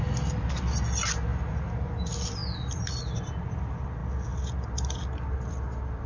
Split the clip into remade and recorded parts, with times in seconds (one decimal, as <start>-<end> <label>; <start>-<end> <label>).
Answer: 0.0-6.1 recorded